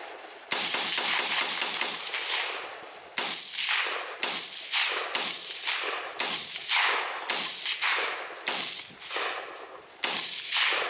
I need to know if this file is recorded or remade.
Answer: recorded